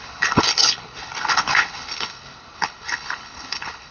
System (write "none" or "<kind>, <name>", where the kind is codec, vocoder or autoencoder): codec, HILCodec